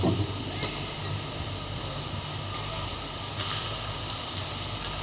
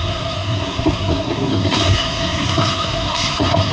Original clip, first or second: first